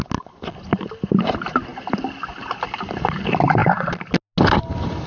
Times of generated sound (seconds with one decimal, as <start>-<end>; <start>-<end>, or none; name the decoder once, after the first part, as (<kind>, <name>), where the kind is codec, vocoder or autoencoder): none